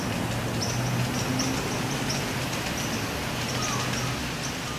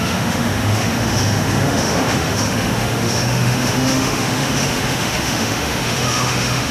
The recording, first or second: first